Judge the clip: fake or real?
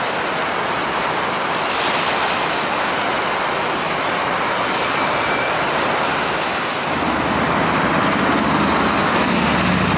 real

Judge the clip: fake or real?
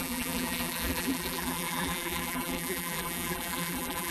fake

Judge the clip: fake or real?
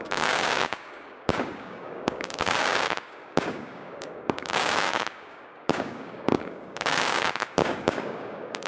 fake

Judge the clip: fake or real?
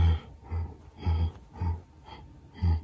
real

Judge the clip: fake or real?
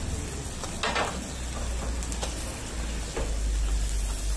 real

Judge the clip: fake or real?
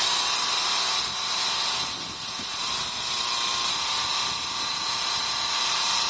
real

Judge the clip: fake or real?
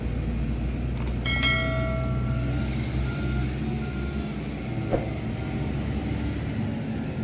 real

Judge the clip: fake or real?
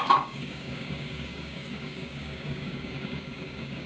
fake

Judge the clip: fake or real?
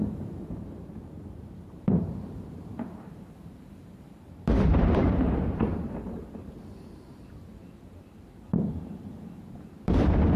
fake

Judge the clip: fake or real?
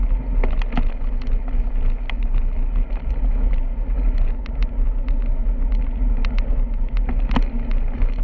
real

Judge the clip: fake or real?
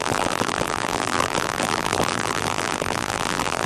fake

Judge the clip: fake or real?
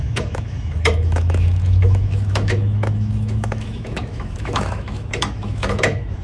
fake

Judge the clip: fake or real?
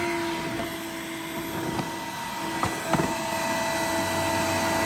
real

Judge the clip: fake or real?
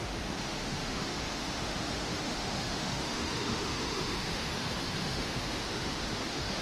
fake